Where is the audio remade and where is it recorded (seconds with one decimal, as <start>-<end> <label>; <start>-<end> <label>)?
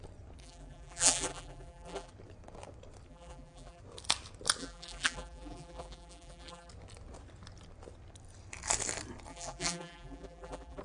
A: 0.0-0.4 recorded; 0.4-2.1 remade; 2.1-3.1 recorded; 3.1-3.8 remade; 3.8-4.6 recorded; 4.6-6.7 remade; 6.7-9.3 recorded; 9.3-10.8 remade